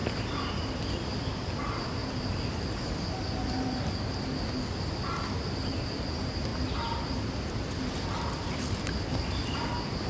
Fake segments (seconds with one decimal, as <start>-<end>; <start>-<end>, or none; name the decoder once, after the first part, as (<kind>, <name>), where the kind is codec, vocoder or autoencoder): none